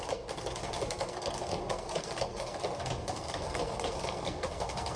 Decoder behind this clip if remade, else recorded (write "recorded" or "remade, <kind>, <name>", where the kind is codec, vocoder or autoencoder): remade, codec, SNAC